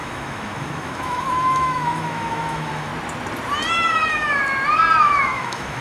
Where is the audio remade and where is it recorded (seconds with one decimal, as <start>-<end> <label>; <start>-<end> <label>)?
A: 0.0-2.9 remade; 2.9-3.7 recorded; 3.7-4.4 remade; 4.4-5.0 recorded; 5.0-5.8 remade